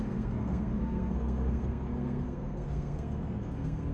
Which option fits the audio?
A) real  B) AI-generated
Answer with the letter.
B